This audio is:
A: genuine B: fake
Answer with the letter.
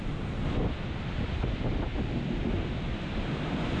A